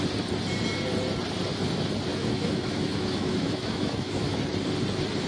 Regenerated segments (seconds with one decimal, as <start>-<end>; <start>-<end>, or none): 2.1-4.4